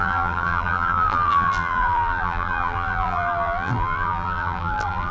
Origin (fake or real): fake